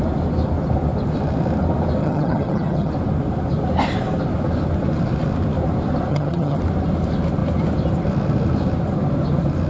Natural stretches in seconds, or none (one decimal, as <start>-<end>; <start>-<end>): 0.0-2.0; 2.9-6.1; 6.6-9.7